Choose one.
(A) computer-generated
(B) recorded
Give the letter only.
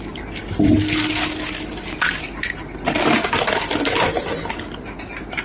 B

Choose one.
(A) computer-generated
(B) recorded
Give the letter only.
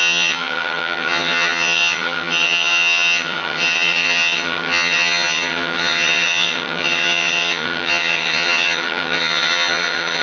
A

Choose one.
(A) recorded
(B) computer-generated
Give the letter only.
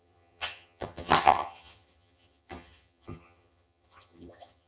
B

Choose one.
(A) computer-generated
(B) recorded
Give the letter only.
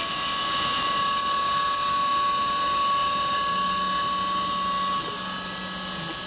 B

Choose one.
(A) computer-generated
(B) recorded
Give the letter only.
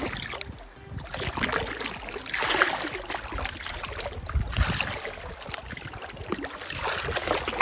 B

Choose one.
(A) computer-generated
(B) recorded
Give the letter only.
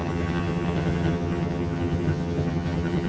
A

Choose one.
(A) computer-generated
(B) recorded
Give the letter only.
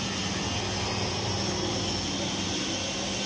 B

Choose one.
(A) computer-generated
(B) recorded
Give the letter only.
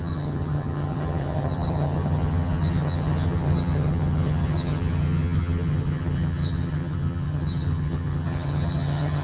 A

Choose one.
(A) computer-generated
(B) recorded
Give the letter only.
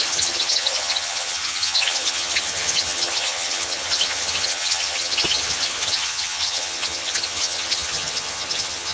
A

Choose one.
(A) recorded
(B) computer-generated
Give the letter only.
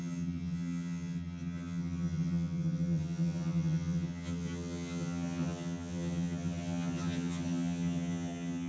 B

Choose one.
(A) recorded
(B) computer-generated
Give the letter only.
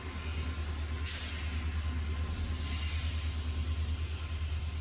A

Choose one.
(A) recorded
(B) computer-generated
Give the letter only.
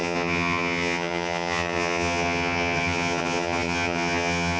B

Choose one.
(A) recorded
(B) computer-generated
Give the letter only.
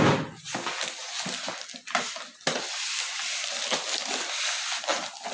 A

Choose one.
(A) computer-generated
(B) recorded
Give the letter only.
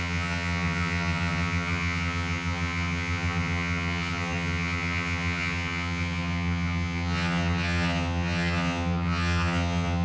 A